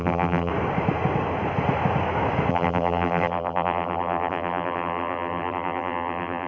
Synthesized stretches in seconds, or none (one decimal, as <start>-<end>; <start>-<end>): 0.0-0.5; 2.5-6.5